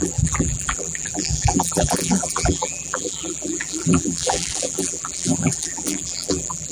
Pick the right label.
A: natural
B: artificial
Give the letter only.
B